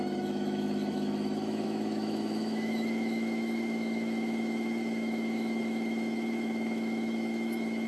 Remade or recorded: remade